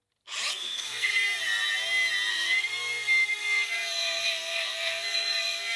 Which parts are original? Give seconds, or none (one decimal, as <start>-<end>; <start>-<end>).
0.0-0.5; 1.4-2.3